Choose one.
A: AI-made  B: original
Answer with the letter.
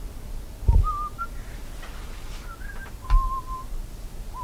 B